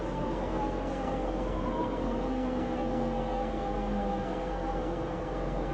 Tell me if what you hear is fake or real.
fake